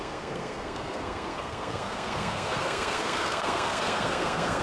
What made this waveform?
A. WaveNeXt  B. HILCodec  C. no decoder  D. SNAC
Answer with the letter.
D